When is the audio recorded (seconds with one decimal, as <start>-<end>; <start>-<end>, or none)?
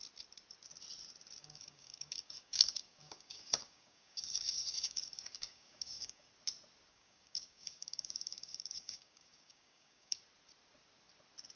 0.0-1.4; 6.3-6.9; 10.2-11.6